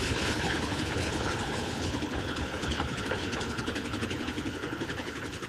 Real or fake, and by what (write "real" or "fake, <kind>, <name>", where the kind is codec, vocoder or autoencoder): fake, codec, HILCodec